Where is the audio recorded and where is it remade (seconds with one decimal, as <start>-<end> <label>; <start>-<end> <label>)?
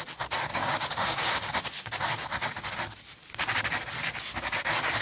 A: 0.0-0.5 recorded; 0.5-1.4 remade; 1.4-5.0 recorded